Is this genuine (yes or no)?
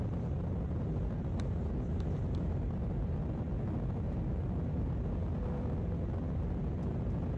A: yes